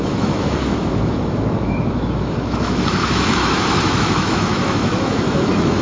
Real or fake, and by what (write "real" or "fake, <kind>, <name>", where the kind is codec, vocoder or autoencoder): fake, autoencoder, DAC-VAE